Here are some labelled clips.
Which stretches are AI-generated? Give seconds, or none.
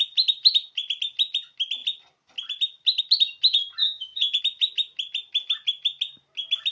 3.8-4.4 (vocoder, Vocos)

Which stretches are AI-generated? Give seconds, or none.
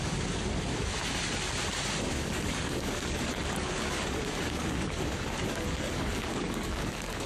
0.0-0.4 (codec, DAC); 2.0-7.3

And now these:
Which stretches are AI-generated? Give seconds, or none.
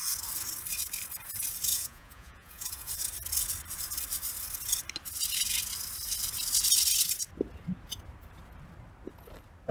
1.7-2.9 (vocoder, Vocos)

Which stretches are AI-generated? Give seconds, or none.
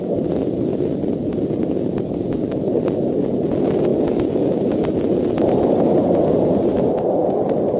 none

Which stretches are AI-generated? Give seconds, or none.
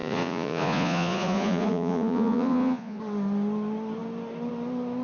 0.0-3.0 (vocoder, Vocos)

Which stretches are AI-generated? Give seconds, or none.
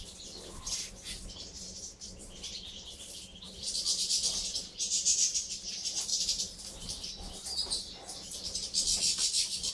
none